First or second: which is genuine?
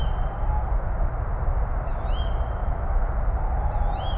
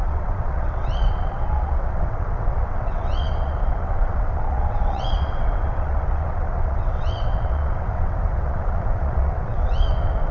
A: first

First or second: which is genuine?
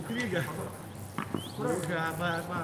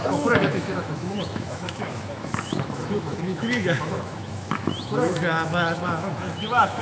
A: first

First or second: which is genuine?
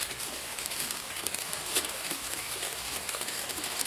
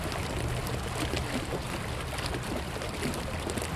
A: second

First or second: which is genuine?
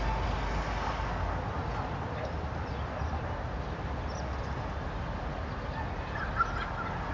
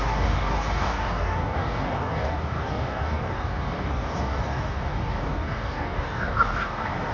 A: first